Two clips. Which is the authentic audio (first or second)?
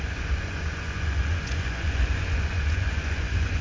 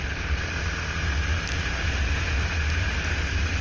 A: second